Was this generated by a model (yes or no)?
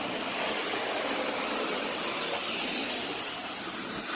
no